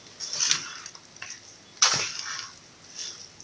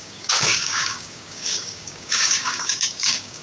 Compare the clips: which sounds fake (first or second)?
second